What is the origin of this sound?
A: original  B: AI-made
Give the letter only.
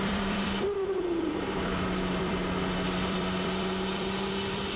B